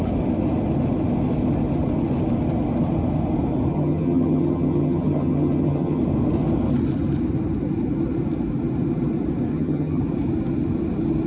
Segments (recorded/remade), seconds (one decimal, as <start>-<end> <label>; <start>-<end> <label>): 0.0-3.7 recorded; 3.7-6.0 remade; 6.0-9.5 recorded; 9.5-10.0 remade; 10.0-11.3 recorded